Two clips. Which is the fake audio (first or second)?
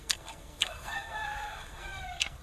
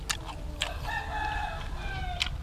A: first